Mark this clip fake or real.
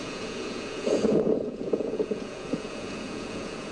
fake